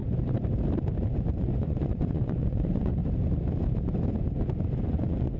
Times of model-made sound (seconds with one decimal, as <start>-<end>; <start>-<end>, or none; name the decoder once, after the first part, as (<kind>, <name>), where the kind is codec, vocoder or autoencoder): 1.4-3.0 (vocoder, Vocos); 4.8-5.4